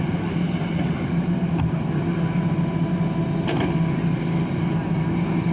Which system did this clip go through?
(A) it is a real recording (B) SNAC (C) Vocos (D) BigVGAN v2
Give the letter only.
A